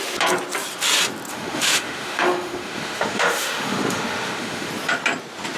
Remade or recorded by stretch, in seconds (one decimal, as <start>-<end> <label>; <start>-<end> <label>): 0.0-1.3 recorded; 1.3-4.7 remade; 4.7-5.6 recorded